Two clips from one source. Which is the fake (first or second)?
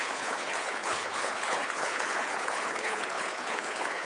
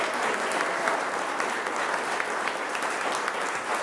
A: first